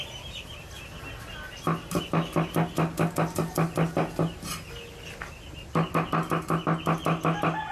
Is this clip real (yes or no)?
yes